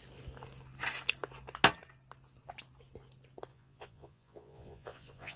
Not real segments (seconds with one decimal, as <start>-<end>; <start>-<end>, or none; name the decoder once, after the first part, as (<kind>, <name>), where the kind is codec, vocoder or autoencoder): 3.5-5.4 (vocoder, Vocos)